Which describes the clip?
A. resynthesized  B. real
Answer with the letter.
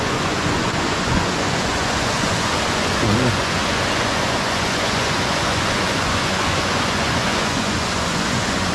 A